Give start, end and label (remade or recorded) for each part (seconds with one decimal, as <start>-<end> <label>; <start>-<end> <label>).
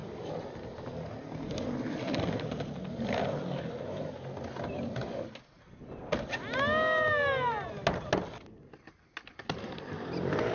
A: 0.0-10.5 recorded